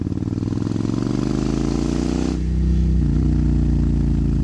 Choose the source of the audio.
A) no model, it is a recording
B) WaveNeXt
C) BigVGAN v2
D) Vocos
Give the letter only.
A